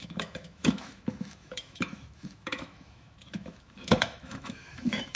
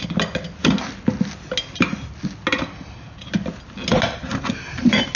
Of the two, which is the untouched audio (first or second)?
second